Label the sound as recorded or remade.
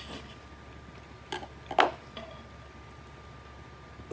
recorded